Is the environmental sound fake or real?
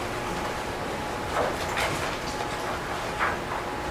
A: real